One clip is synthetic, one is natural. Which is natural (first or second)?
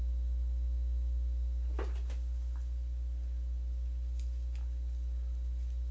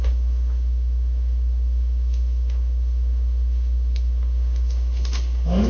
first